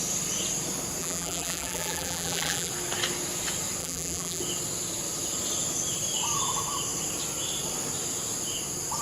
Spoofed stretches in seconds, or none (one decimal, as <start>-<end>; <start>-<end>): 1.0-2.7; 3.8-4.4